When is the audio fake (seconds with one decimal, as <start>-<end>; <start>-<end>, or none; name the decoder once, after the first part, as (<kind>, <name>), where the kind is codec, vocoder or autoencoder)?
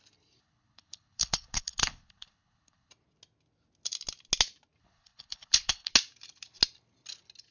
0.4-2.9 (codec, HILCodec); 4.8-5.9